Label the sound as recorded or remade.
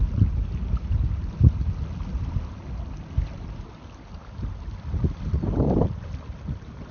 recorded